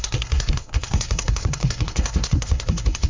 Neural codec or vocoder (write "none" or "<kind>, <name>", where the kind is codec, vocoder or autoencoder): codec, SNAC